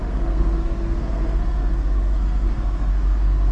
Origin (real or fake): fake